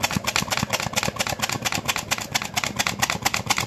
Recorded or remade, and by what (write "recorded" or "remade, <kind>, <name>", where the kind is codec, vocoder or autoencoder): recorded